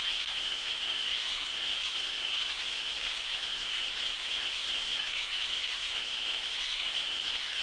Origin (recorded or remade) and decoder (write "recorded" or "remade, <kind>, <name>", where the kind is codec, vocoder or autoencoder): remade, codec, SNAC